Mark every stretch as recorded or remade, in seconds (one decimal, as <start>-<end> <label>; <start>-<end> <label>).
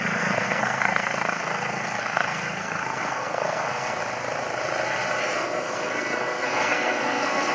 0.0-4.0 remade; 4.0-5.2 recorded; 5.2-7.5 remade